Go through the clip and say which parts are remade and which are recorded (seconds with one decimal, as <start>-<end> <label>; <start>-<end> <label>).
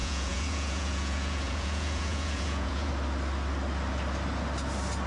0.0-2.9 remade; 2.9-5.1 recorded